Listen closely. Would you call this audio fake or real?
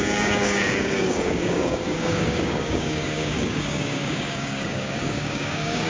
fake